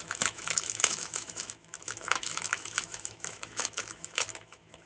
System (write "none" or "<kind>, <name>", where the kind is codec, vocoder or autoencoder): autoencoder, DAC-VAE